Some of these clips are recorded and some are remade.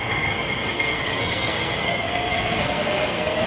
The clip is remade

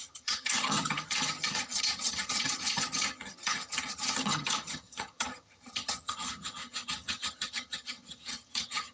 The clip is remade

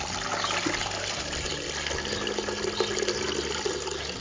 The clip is recorded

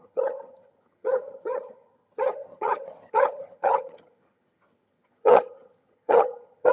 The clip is remade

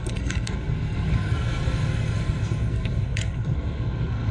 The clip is remade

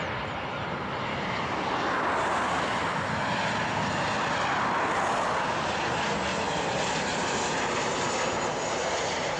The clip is recorded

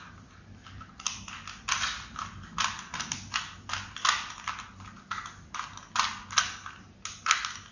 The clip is recorded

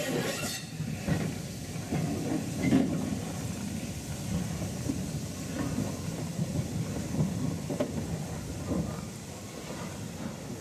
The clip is recorded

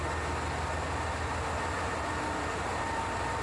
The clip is recorded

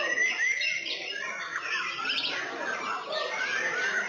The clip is recorded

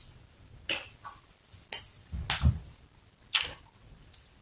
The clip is recorded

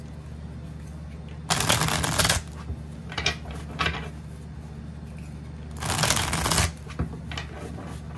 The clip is recorded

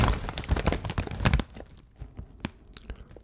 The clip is recorded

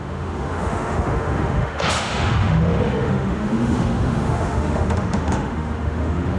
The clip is remade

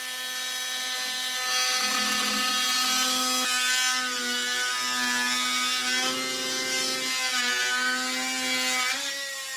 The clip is recorded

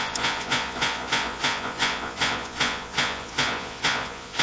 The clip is remade